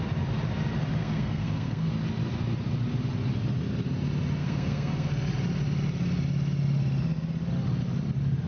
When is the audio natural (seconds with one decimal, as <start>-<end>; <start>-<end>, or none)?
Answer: 0.0-1.0; 1.9-4.4; 5.1-8.5